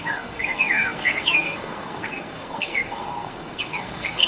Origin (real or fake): fake